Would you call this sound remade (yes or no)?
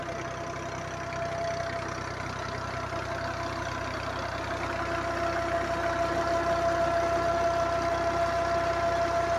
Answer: no